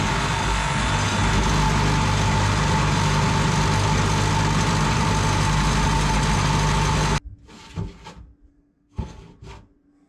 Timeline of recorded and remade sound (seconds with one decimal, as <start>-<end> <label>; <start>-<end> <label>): 0.0-8.5 recorded; 8.5-9.3 remade; 9.3-10.1 recorded